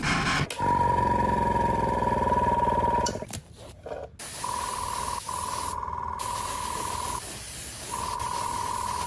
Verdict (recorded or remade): recorded